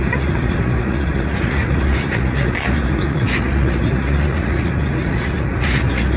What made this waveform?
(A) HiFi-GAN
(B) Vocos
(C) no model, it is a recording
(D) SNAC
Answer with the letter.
B